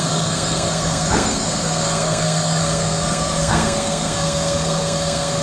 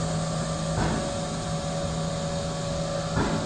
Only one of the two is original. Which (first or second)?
second